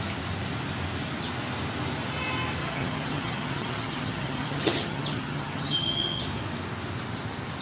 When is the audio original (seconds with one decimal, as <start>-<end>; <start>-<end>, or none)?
0.0-2.6; 6.2-7.6